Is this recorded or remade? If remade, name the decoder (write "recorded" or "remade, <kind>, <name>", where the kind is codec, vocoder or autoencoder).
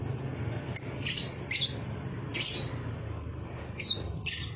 recorded